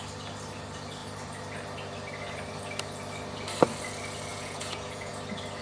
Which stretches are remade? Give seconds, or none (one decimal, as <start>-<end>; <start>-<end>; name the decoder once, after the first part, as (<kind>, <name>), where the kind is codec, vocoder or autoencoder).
4.3-5.1 (vocoder, Vocos)